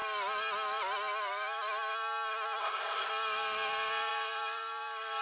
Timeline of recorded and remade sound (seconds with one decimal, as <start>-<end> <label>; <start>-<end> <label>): 0.0-2.6 recorded; 2.6-3.1 remade; 3.1-5.2 recorded